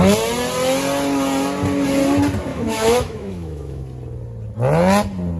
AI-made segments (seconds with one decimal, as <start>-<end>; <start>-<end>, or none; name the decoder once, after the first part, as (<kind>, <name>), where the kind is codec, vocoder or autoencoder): 2.5-3.8 (autoencoder, DAC-VAE)